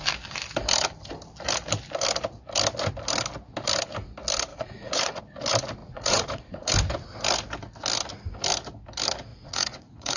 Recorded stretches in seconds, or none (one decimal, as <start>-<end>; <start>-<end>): 0.0-4.5; 5.2-5.8; 6.7-9.3